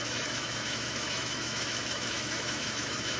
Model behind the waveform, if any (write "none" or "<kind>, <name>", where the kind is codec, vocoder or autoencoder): autoencoder, DAC-VAE